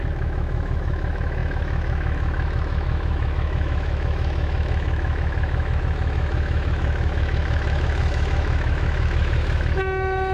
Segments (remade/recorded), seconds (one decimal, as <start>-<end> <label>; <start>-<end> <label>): 0.0-10.3 remade